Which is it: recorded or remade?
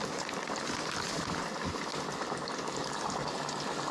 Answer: recorded